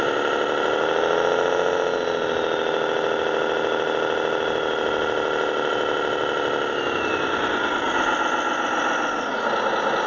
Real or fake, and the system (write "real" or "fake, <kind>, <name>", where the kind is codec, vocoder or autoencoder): real